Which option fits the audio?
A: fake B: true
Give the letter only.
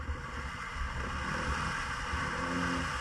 B